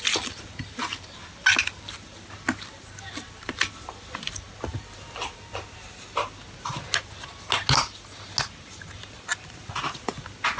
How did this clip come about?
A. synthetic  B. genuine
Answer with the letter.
B